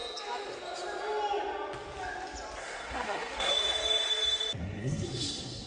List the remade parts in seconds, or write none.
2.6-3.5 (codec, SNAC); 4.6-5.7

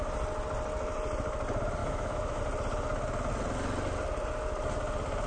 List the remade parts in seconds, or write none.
1.8-2.4 (autoencoder, DAC-VAE)